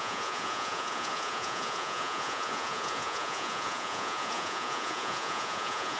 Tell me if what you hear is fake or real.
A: fake